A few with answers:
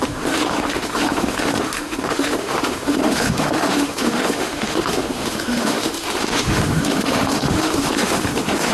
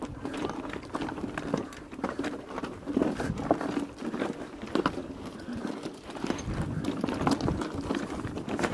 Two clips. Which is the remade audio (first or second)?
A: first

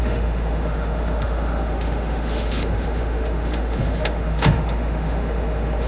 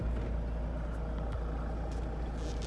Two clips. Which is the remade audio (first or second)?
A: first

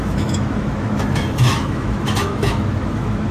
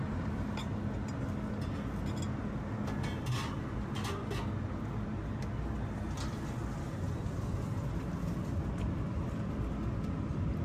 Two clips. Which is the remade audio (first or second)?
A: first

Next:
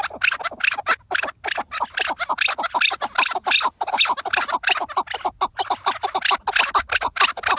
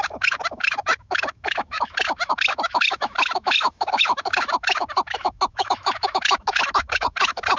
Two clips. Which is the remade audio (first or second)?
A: second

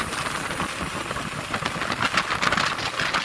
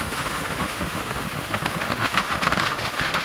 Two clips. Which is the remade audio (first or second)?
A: second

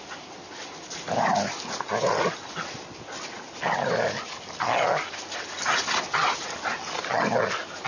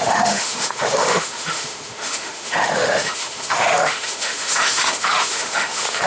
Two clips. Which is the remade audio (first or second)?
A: second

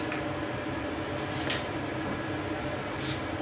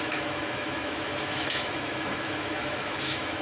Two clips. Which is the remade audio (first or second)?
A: second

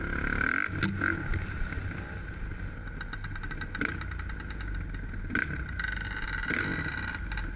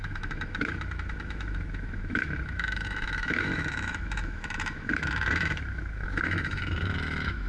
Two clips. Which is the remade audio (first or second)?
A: second